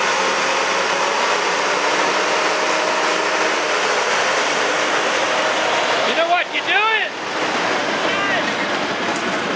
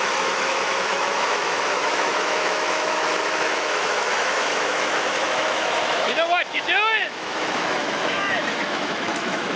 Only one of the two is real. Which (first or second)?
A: first